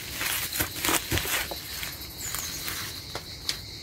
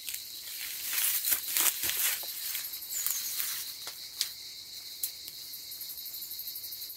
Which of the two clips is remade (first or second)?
second